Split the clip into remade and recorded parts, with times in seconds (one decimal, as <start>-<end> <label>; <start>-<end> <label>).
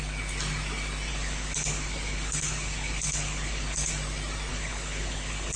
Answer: 0.0-1.1 recorded; 1.1-3.9 remade; 3.9-4.5 recorded; 4.5-5.6 remade